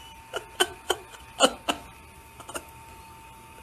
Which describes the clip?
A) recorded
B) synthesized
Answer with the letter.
A